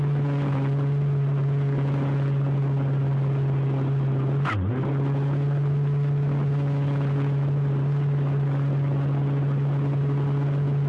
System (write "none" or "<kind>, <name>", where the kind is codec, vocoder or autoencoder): none